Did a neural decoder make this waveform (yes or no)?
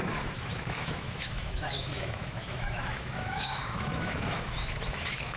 yes